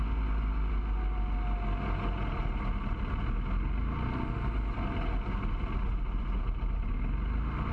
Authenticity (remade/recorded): recorded